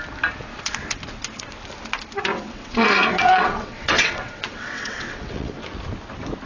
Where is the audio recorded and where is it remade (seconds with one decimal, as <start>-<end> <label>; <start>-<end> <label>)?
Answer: 0.0-2.3 recorded; 2.3-5.6 remade; 5.6-6.5 recorded